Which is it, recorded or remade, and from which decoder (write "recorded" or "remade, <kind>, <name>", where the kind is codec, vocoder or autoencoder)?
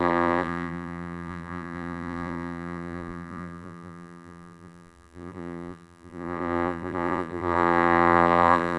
remade, vocoder, BigVGAN v2